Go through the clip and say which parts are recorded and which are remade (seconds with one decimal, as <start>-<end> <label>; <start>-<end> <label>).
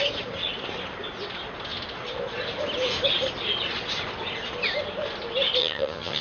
0.0-5.6 recorded; 5.6-6.2 remade